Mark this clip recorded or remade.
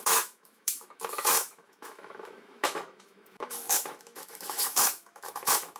remade